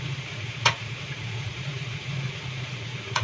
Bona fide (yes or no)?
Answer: no